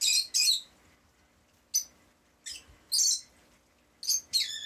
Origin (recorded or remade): recorded